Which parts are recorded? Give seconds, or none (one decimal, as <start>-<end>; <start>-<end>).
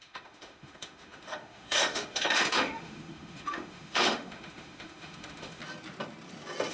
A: 5.6-6.7